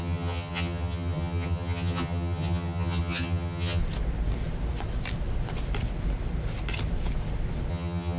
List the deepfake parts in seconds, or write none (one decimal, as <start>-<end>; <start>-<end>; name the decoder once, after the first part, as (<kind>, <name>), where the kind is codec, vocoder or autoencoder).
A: 0.0-3.8 (vocoder, HiFi-GAN); 7.7-8.2